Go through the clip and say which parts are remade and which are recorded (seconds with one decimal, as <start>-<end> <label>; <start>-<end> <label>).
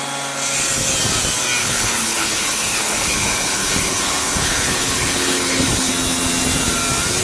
0.0-1.6 recorded; 1.6-5.9 remade; 5.9-7.2 recorded